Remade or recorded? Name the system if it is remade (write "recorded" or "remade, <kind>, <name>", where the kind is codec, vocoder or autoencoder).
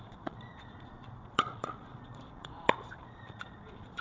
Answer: remade, vocoder, Vocos